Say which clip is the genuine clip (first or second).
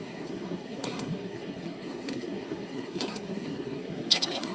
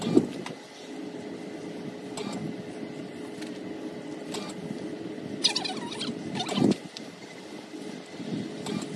second